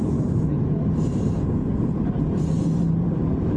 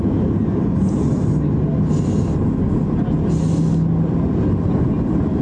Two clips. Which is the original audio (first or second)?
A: second